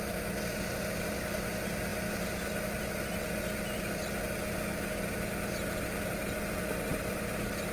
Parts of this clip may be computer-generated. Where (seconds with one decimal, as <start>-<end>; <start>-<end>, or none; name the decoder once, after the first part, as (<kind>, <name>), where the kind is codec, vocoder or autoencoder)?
6.9-7.7 (vocoder, BigVGAN v2)